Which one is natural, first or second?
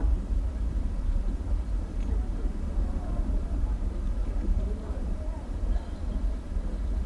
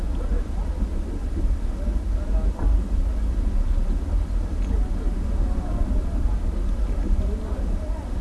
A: second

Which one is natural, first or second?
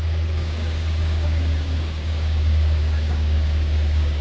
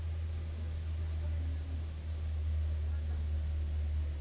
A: second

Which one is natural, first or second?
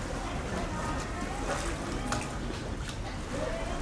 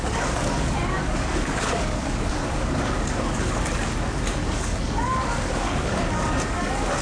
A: first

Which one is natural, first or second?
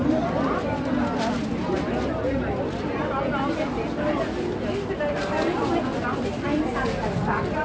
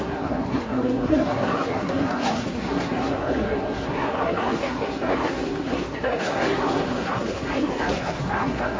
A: first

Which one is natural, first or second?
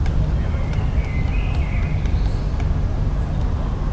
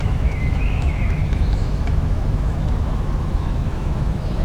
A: first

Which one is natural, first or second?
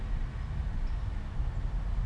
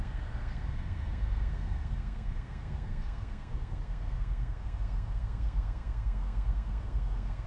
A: first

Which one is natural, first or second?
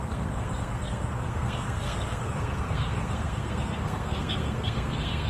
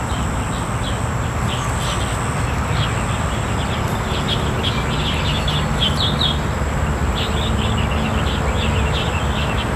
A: second